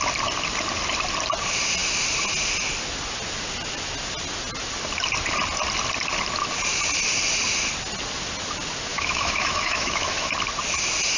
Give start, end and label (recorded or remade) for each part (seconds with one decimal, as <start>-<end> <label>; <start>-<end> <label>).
0.0-8.9 recorded; 8.9-10.3 remade; 10.3-11.2 recorded